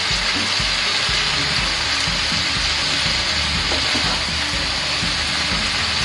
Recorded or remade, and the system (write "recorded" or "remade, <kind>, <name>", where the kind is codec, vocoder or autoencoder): recorded